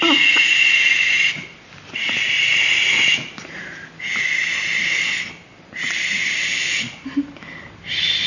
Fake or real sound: real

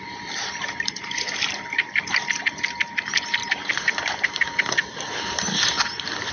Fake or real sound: fake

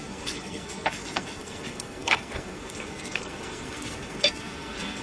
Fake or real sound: fake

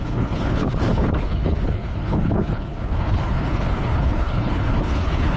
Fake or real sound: fake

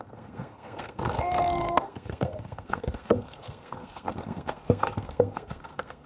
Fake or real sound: fake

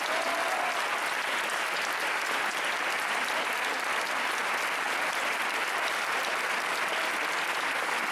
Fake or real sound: real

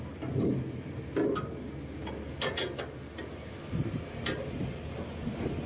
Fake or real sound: real